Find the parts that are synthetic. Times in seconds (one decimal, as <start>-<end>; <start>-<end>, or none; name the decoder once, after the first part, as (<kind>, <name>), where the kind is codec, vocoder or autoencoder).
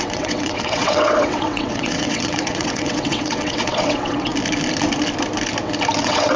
0.0-4.3 (vocoder, WaveNeXt); 6.0-6.4